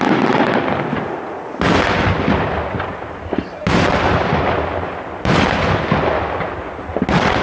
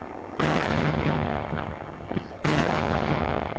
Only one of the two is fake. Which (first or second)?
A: second